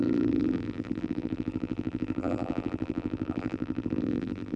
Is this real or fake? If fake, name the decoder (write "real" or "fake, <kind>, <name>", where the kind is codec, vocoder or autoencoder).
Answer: fake, vocoder, BigVGAN v2